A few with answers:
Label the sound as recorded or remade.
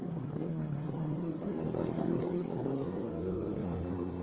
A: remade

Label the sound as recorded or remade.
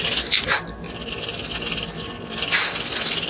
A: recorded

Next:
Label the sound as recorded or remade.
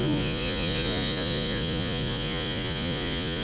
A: remade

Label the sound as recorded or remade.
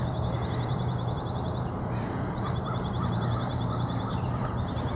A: remade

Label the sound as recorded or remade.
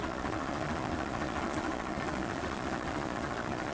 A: remade